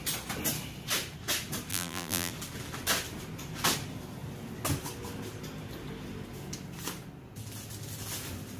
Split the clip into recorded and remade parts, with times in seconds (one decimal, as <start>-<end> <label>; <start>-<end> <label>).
0.0-1.7 recorded; 1.7-2.3 remade; 2.3-8.6 recorded